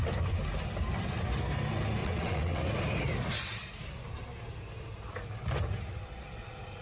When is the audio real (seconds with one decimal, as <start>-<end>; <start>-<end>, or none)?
0.0-2.0; 2.6-6.8